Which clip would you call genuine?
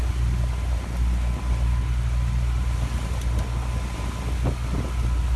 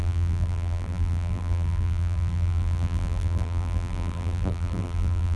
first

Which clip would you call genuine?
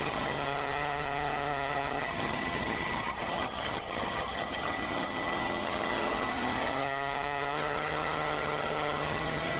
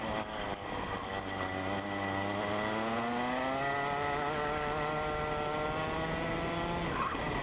second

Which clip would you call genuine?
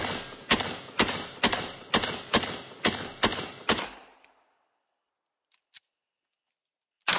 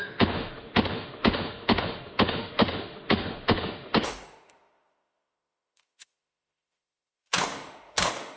first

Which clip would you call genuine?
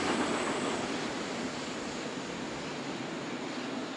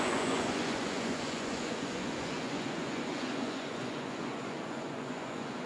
first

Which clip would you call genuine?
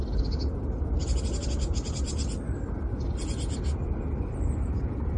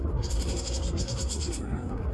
first